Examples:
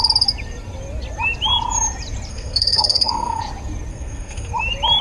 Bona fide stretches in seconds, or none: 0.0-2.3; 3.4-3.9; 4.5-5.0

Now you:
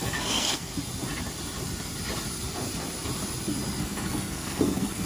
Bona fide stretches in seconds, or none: 0.7-3.8

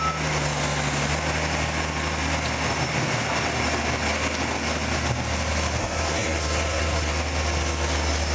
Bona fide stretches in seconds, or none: 0.0-5.8; 7.1-8.3

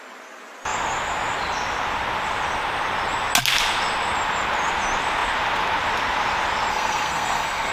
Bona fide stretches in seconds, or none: 0.0-6.7

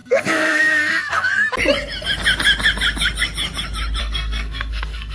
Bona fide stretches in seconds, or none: 1.3-4.0

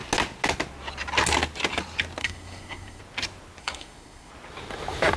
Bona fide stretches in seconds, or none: 0.0-2.2; 3.0-3.6; 4.3-5.2

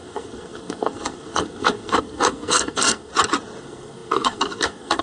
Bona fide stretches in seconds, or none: 3.1-3.6

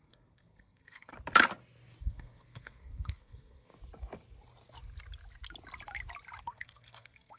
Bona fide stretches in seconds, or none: 1.1-2.0; 3.7-6.4